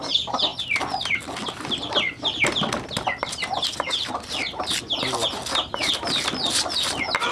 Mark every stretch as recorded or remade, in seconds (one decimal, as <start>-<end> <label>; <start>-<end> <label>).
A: 0.0-7.3 recorded

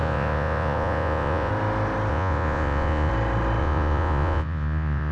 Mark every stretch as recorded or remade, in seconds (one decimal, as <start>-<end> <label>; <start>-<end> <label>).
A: 0.0-1.5 remade; 1.5-2.1 recorded; 2.1-3.1 remade; 3.1-3.6 recorded; 3.6-5.1 remade

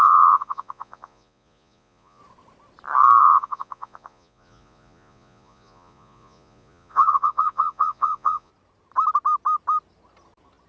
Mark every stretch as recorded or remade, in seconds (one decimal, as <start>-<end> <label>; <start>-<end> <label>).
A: 0.0-2.2 remade; 2.2-3.2 recorded; 3.2-8.5 remade; 8.5-10.7 recorded

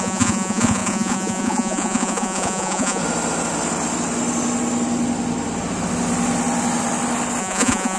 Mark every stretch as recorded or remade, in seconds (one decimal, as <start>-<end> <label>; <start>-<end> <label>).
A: 0.0-3.0 remade; 3.0-7.4 recorded; 7.4-8.0 remade

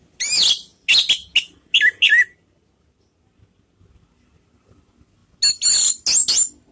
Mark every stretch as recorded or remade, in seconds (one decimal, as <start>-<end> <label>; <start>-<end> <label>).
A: 0.0-6.7 recorded

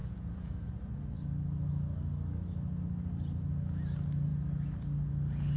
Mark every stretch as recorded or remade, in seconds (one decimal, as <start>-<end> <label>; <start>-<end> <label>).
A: 0.0-0.9 remade; 0.9-5.6 recorded

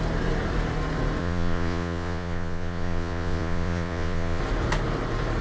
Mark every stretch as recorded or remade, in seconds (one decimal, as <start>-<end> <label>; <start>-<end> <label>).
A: 0.0-1.2 recorded; 1.2-4.4 remade; 4.4-5.4 recorded